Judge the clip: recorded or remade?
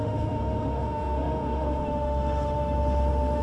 remade